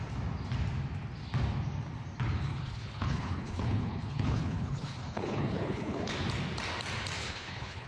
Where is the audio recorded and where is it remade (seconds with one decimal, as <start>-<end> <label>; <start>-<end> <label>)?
0.0-2.5 recorded; 2.5-6.1 remade; 6.1-7.2 recorded; 7.2-7.9 remade